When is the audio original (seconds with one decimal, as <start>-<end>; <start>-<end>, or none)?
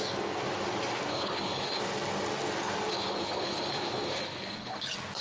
0.0-1.1; 1.8-2.9; 4.8-5.2